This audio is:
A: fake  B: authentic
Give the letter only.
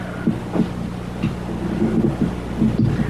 B